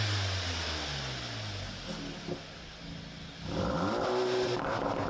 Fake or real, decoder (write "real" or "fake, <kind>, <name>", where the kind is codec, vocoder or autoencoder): real